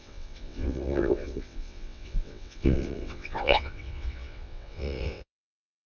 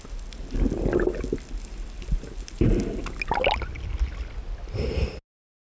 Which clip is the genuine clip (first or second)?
second